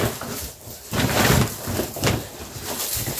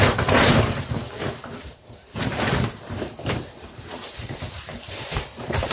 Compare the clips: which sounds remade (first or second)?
second